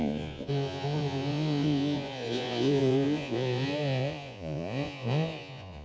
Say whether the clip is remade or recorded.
remade